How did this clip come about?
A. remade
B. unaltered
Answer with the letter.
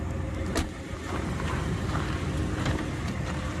B